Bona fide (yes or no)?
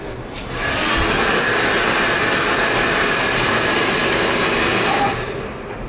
yes